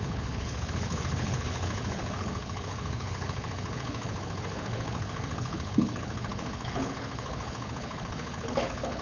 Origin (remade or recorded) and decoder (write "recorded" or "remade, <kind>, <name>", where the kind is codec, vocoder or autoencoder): remade, codec, HILCodec